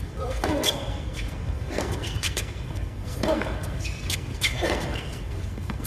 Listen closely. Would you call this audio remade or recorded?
remade